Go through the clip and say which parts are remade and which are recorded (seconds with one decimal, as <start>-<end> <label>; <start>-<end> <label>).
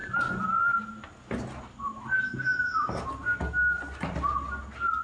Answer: 0.0-5.0 recorded